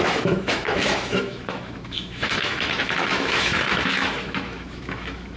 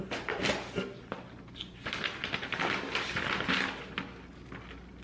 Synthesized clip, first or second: first